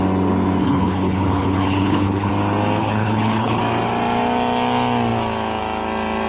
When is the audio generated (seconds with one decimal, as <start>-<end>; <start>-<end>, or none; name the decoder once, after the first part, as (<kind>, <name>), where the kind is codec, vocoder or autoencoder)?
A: 0.6-2.3 (codec, HILCodec); 2.8-3.6